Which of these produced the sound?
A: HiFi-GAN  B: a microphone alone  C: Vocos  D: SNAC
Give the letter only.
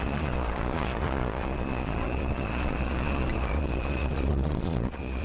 C